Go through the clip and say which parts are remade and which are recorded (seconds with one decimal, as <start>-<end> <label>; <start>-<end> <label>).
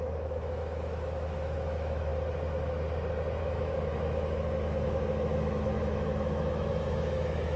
0.0-2.1 remade; 2.1-3.4 recorded; 3.4-7.6 remade